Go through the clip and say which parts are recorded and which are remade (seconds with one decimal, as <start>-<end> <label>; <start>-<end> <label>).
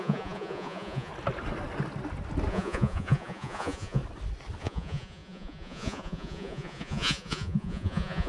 0.0-1.1 remade; 1.1-2.5 recorded; 2.5-4.0 remade; 4.0-4.6 recorded; 4.6-8.3 remade